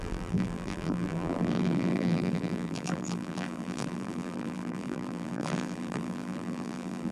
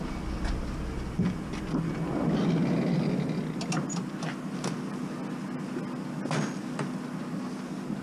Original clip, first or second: second